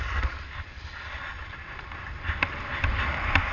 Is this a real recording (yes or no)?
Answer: yes